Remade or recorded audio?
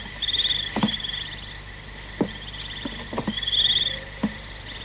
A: recorded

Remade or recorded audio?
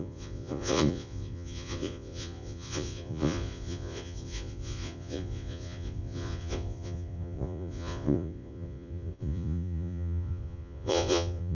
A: remade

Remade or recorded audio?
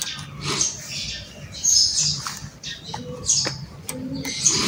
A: recorded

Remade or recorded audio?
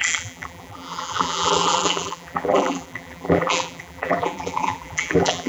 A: remade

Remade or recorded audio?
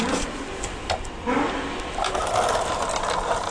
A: remade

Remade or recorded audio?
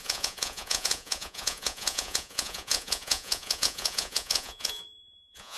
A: remade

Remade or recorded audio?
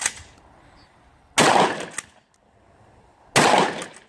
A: recorded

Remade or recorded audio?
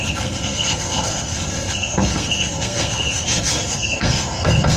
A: remade